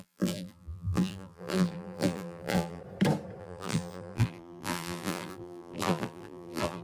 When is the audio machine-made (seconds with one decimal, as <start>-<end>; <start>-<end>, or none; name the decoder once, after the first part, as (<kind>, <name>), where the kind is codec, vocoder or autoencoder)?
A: 0.0-2.8 (vocoder, BigVGAN v2); 3.4-6.8